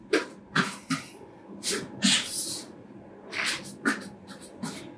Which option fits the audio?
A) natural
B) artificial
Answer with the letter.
A